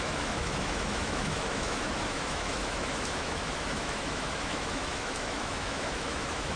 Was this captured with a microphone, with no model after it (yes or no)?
no